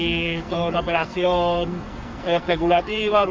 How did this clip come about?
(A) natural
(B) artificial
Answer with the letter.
B